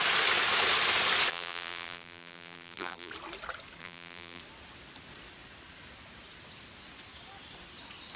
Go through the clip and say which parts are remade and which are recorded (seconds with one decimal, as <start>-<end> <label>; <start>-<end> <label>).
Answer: 0.0-1.3 recorded; 1.3-3.1 remade; 3.1-3.8 recorded; 3.8-4.4 remade; 4.4-8.2 recorded